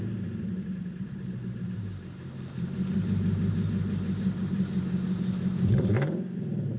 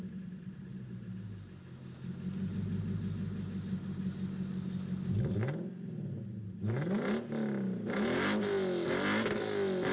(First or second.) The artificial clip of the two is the first